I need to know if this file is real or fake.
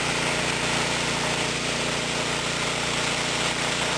real